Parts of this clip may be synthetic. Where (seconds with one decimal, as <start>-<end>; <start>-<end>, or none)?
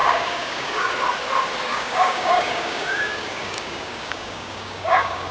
0.0-0.9; 1.7-5.3